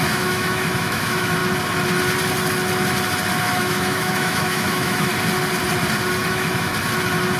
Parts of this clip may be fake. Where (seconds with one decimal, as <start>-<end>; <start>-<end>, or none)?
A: 0.0-1.4; 3.4-5.1; 6.3-6.7